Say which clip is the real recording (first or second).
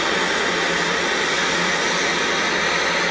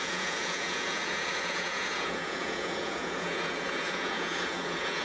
first